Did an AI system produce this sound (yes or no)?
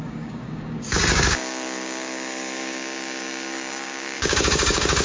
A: yes